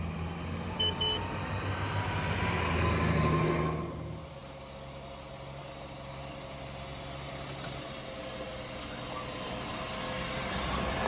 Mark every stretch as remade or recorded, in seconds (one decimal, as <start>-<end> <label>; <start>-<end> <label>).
0.0-11.1 recorded